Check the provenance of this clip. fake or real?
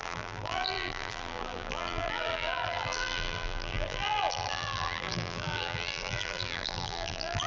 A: fake